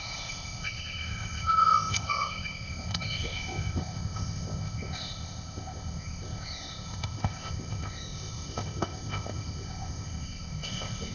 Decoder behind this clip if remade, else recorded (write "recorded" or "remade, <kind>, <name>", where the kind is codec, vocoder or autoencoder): remade, codec, ZipCodec